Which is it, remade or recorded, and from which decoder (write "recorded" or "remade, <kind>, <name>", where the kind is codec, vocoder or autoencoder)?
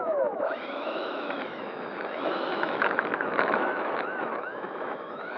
remade, autoencoder, DAC-VAE